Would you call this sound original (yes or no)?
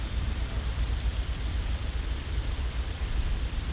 no